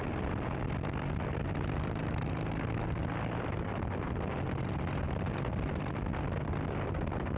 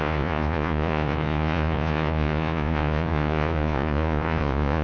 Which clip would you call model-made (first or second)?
second